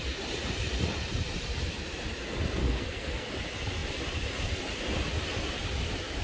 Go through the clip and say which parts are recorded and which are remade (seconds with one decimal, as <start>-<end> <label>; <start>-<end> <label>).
0.0-2.6 recorded; 2.6-3.3 remade; 3.3-6.2 recorded